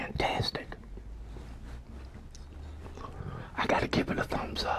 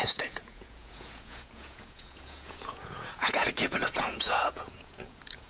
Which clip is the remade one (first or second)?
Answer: second